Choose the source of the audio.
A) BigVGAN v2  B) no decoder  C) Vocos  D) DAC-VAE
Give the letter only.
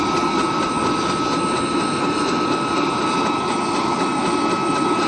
B